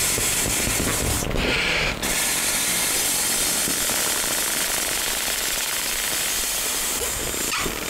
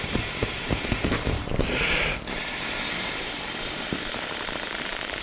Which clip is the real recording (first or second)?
first